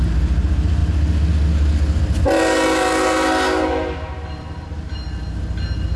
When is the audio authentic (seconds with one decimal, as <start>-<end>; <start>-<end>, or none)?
0.0-6.0